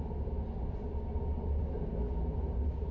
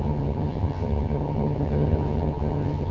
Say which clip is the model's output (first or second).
second